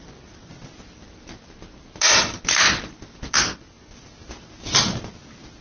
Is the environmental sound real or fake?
real